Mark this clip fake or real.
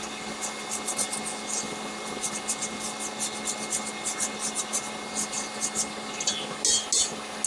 real